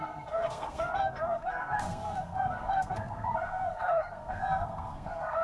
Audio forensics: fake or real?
fake